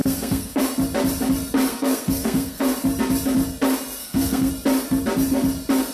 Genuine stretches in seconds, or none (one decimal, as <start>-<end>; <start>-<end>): 0.6-1.7; 2.7-4.0; 4.5-5.9